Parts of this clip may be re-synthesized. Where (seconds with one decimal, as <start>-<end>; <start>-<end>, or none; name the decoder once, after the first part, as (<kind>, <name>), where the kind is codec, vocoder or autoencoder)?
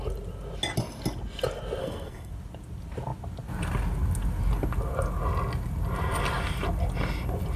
1.8-2.3 (codec, SNAC)